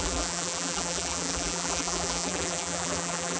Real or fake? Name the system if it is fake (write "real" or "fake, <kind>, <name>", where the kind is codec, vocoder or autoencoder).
fake, vocoder, BigVGAN v2